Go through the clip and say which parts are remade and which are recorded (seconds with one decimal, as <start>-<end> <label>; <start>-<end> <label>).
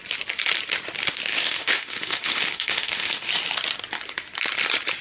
0.0-1.3 recorded; 1.3-3.3 remade; 3.3-5.0 recorded